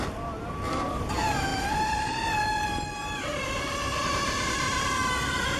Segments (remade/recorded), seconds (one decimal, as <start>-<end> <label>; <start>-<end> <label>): 0.0-1.5 recorded; 1.5-4.9 remade; 4.9-5.6 recorded